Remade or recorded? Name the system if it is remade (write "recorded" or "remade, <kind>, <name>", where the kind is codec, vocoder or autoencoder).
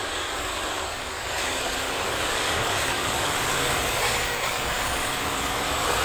remade, codec, DAC